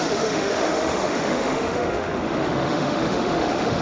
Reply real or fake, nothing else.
fake